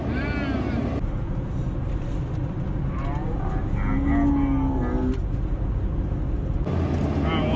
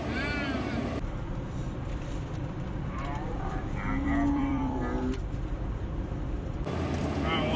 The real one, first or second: first